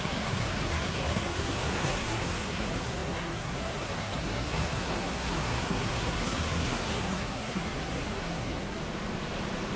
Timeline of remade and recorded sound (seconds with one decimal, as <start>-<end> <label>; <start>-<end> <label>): 0.0-8.8 remade; 8.8-9.8 recorded